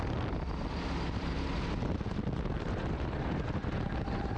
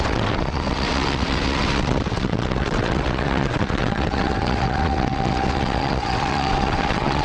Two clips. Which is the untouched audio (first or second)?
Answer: first